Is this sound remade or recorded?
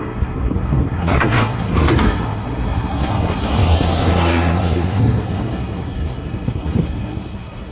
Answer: remade